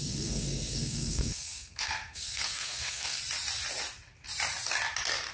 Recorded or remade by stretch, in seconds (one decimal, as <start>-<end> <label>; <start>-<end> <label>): 0.0-3.2 remade; 3.2-5.3 recorded